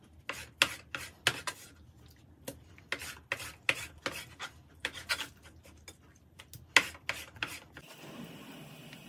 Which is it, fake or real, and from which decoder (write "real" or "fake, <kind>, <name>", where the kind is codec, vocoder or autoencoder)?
real